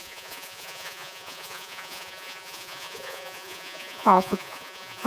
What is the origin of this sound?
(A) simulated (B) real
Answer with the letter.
A